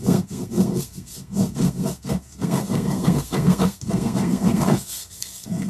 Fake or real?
fake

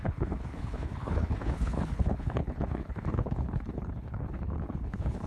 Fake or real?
fake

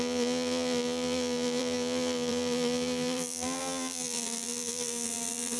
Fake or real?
fake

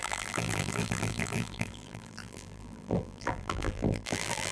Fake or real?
fake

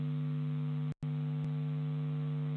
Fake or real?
real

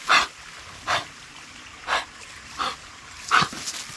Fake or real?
real